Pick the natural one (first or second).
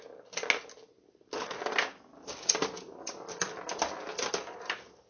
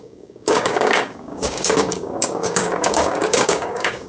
first